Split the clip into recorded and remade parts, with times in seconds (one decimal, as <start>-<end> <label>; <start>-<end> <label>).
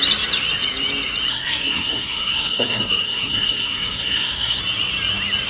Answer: 0.0-1.3 recorded; 1.3-4.6 remade; 4.6-5.5 recorded